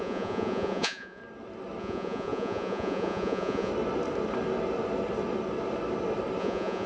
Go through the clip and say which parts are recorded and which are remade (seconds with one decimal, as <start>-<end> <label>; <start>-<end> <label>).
0.0-1.2 remade; 1.2-1.8 recorded; 1.8-3.7 remade; 3.7-6.4 recorded; 6.4-6.9 remade